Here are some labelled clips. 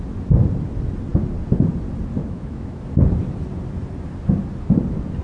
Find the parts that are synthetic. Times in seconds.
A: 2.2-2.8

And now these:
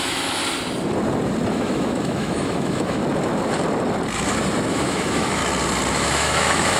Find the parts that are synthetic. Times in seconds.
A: 0.0-0.4; 1.5-3.0; 4.7-5.4; 5.9-6.8